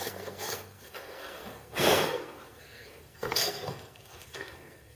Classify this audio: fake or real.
fake